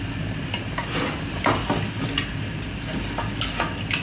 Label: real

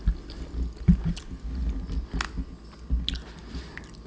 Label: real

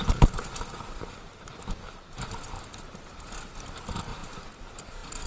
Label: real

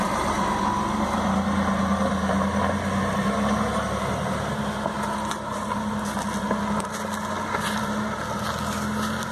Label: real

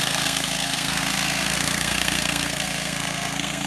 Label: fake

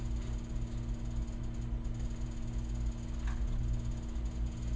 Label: real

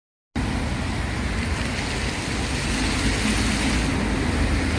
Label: real